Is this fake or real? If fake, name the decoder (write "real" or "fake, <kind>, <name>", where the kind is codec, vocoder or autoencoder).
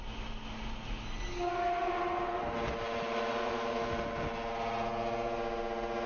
real